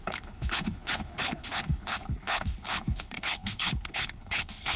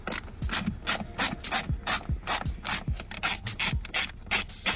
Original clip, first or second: second